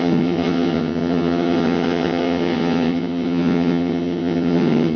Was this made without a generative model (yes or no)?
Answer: no